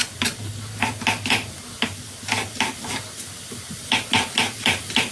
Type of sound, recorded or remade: recorded